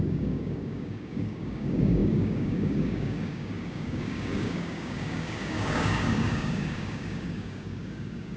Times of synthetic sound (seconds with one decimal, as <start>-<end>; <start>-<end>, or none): 0.0-8.4